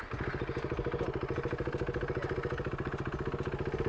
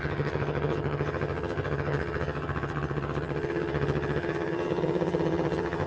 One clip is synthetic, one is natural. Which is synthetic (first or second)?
second